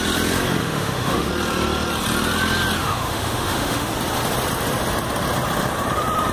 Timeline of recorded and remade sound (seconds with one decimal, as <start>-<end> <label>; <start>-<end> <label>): 0.0-0.6 recorded; 0.6-1.3 remade; 1.3-2.8 recorded; 2.8-3.9 remade; 3.9-6.3 recorded